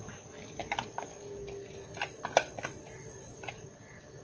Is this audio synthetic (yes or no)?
no